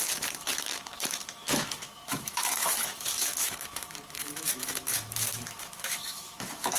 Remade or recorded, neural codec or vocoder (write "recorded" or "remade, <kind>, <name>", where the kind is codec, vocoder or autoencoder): remade, autoencoder, DAC-VAE